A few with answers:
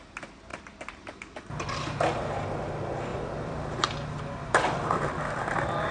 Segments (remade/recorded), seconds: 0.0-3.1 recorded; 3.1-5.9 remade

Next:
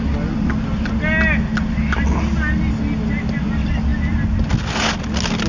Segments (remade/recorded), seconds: 0.0-5.5 recorded

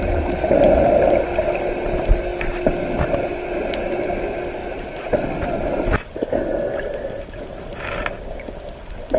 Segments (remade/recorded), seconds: 0.0-9.2 recorded

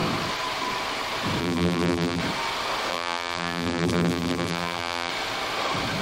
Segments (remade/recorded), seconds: 0.0-1.4 recorded; 1.4-2.2 remade; 2.2-2.9 recorded; 2.9-5.1 remade; 5.1-6.0 recorded

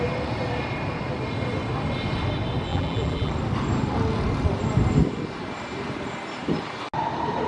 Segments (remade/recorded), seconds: 0.0-2.7 recorded; 2.7-3.3 remade; 3.3-7.5 recorded

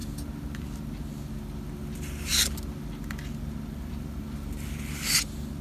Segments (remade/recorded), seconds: 0.0-5.6 recorded